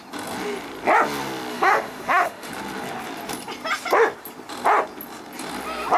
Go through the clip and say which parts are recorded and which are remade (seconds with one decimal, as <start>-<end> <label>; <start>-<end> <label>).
0.0-1.5 recorded; 1.5-2.5 remade; 2.5-6.0 recorded